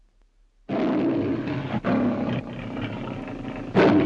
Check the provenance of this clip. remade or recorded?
recorded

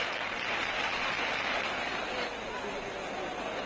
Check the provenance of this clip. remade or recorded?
recorded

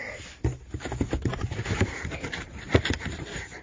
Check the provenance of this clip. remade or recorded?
remade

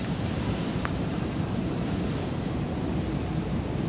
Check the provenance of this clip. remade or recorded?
remade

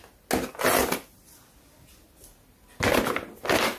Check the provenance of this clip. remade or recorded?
recorded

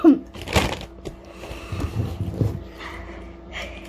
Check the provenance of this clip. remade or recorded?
remade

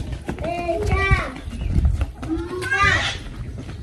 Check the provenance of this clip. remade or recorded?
recorded